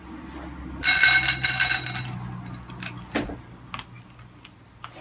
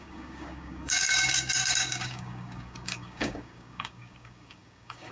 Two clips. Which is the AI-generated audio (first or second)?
second